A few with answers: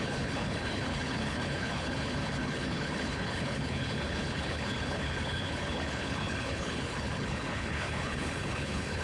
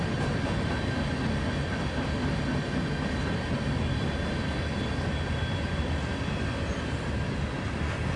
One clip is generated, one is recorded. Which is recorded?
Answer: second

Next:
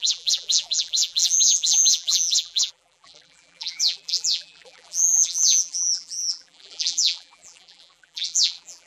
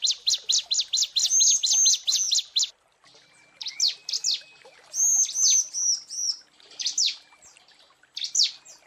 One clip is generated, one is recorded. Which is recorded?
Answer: second